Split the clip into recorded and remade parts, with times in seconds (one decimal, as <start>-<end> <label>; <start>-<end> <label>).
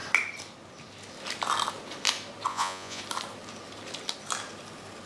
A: 0.0-2.5 recorded; 2.5-3.0 remade; 3.0-5.1 recorded